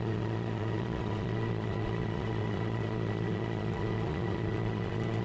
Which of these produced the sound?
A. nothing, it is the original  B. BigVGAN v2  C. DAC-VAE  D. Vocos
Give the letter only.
D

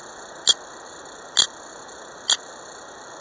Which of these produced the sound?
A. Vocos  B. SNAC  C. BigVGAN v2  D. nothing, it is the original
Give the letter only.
D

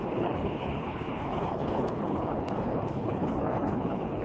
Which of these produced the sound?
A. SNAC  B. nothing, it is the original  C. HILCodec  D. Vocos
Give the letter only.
C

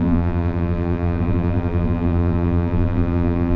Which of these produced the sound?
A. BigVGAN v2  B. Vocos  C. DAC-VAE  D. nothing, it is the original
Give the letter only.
A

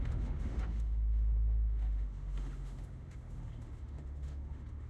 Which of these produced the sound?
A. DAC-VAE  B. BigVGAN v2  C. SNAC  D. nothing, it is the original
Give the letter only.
A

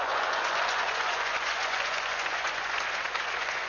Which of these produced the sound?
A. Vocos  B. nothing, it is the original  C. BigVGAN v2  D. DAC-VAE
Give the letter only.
A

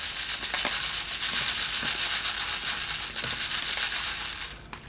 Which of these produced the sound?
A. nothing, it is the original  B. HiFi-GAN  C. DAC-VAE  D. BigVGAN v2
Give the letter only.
A